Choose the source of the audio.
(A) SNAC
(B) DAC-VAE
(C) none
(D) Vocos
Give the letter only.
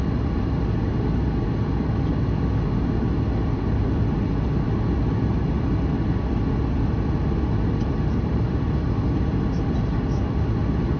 C